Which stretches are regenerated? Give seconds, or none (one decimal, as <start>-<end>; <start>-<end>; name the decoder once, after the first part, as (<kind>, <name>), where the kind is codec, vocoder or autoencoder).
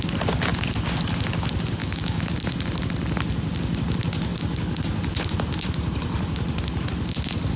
1.8-2.3 (autoencoder, DAC-VAE)